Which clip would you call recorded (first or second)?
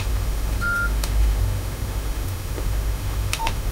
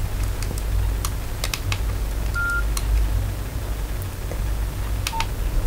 second